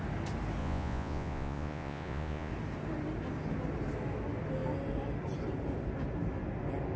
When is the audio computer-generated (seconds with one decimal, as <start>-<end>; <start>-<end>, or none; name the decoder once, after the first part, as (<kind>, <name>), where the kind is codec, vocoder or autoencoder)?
0.6-2.5 (vocoder, Vocos)

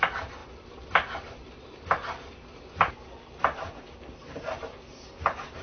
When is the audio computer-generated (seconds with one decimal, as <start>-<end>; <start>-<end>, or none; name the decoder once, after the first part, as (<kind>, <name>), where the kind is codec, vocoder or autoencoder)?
none

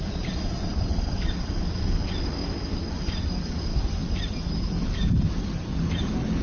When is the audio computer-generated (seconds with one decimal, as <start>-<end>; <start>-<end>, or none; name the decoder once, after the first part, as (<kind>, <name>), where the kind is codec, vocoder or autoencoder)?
none

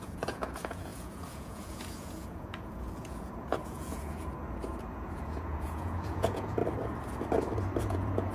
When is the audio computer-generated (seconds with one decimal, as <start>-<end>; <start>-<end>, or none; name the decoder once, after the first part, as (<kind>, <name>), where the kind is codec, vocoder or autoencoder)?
0.0-6.6 (vocoder, Vocos); 7.8-8.3

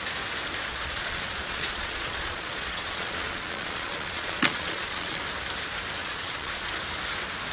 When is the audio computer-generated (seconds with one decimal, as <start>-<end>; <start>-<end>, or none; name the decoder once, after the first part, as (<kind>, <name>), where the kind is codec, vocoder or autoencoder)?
0.7-5.2 (vocoder, Vocos); 6.0-6.7

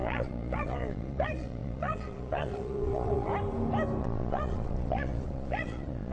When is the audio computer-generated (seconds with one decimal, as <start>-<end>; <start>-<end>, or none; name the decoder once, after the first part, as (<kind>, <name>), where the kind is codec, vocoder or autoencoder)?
0.0-3.3 (vocoder, Vocos); 4.0-6.1

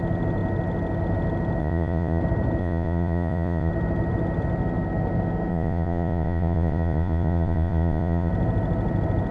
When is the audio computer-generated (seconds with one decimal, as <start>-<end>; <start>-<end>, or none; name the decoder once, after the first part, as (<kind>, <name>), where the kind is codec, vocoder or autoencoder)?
1.6-2.2 (vocoder, Vocos); 2.6-3.7; 5.5-8.3